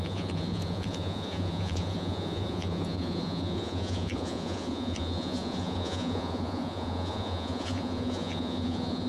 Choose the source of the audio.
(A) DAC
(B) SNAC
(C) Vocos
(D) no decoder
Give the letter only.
C